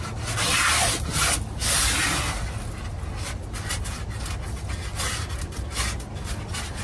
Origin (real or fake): real